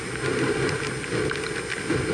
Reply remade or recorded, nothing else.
recorded